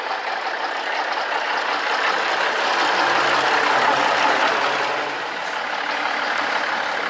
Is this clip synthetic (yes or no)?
no